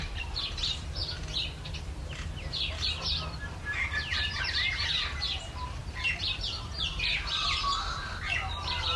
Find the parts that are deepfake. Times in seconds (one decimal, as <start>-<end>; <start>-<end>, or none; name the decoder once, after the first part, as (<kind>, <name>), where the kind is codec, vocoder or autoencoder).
0.0-1.0 (vocoder, BigVGAN v2); 3.5-9.0